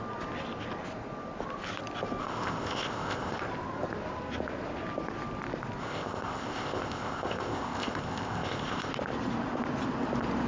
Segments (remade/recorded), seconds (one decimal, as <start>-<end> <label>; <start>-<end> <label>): 0.0-2.2 recorded; 2.2-3.4 remade; 3.4-5.8 recorded; 5.8-8.9 remade; 8.9-10.5 recorded